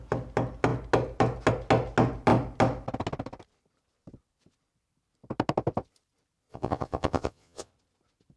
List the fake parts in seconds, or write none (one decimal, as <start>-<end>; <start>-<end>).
6.5-7.7

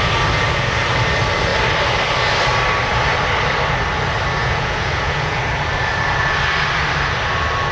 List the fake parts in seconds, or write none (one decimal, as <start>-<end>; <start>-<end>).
4.4-5.4

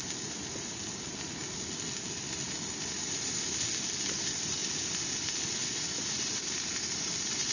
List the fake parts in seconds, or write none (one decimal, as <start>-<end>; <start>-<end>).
5.6-6.4

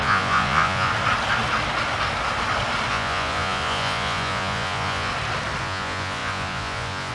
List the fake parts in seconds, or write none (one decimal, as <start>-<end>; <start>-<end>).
0.0-0.9; 2.9-5.1; 5.6-7.1